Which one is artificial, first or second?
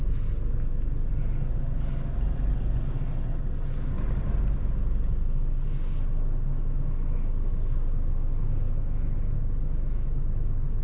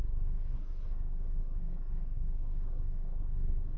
second